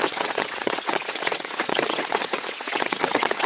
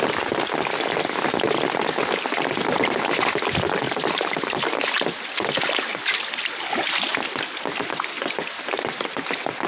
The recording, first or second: second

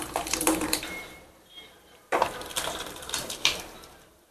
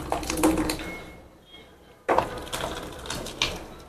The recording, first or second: second